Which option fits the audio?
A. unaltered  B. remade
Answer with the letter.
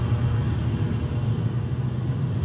A